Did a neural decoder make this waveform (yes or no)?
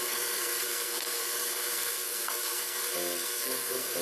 yes